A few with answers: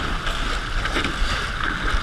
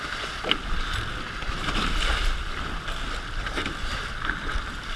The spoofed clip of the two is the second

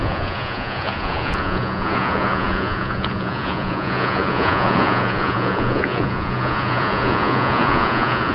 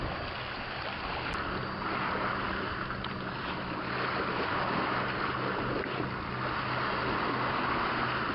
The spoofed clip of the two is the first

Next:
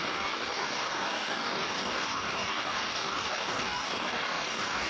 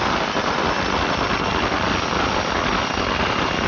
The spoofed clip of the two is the first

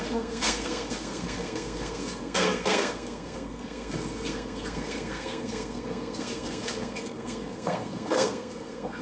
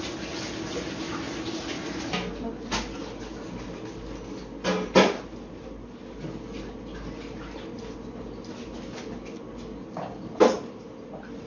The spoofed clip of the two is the first